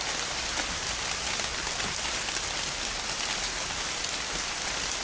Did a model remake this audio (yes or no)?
no